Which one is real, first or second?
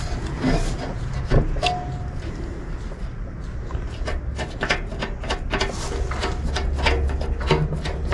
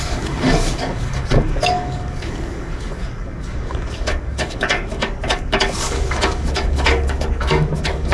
first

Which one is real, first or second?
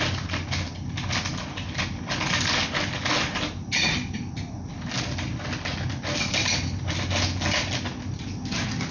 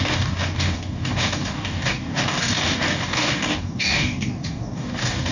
first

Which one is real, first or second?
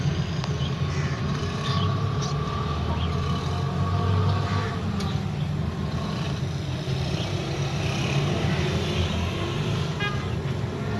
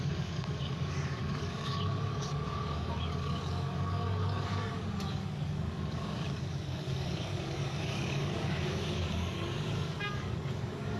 first